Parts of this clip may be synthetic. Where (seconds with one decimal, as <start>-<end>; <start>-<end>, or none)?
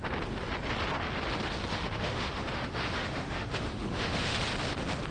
1.7-4.4